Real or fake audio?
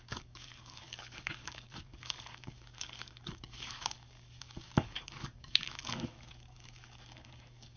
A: fake